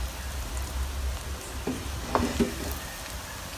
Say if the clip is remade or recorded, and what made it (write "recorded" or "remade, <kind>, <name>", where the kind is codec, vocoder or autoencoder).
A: recorded